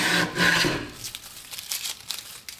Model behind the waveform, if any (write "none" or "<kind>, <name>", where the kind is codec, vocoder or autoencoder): none